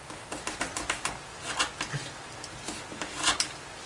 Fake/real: real